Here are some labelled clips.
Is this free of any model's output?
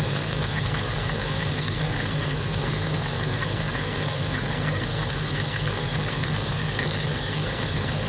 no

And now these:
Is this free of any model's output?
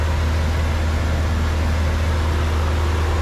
yes